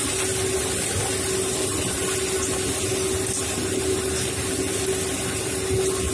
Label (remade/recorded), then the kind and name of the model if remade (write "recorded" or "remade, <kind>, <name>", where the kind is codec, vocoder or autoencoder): recorded